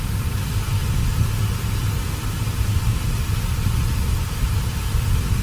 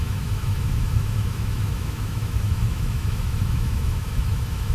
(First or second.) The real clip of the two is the first